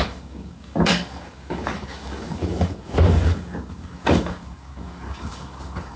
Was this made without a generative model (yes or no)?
no